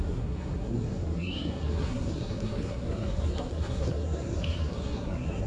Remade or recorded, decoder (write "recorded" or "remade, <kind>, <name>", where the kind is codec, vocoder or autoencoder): remade, codec, SNAC